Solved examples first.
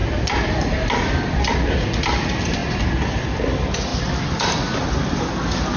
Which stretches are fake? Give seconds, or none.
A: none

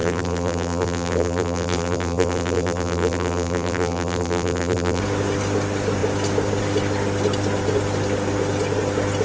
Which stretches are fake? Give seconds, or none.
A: 0.0-5.0 (vocoder, BigVGAN v2)

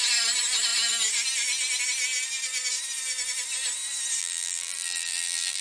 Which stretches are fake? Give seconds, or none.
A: 4.2-5.6 (vocoder, BigVGAN v2)

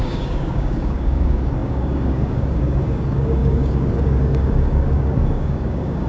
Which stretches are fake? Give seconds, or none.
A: 0.0-6.1 (codec, DAC)

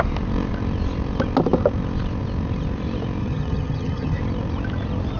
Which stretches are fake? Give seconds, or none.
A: 3.2-4.2 (vocoder, HiFi-GAN)